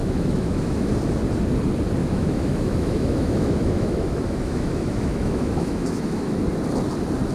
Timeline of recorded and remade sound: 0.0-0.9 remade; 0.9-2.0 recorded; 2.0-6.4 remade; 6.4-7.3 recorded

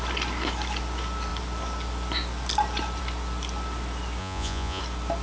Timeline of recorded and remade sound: 0.0-4.2 recorded; 4.2-4.8 remade; 4.8-5.2 recorded